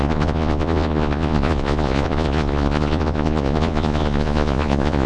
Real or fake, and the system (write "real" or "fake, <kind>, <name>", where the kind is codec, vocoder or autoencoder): fake, vocoder, Vocos